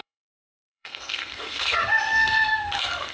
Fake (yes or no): yes